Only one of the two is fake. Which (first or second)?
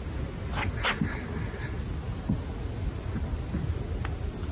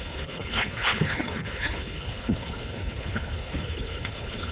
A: second